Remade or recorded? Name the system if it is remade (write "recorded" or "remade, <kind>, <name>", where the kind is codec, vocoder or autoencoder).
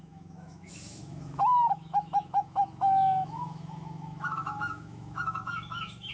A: remade, autoencoder, DAC-VAE